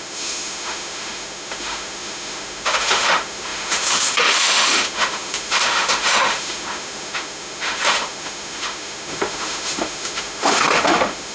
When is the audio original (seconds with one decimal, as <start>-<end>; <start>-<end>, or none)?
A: none